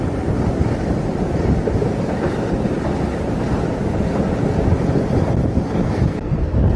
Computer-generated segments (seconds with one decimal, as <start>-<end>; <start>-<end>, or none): 5.8-6.8